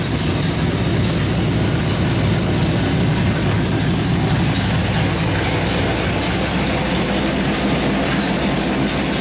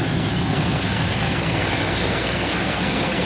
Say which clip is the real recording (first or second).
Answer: first